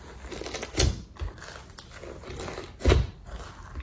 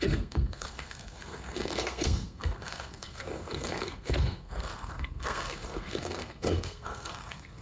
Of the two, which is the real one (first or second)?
first